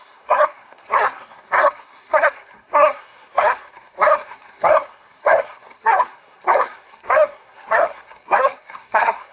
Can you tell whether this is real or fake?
fake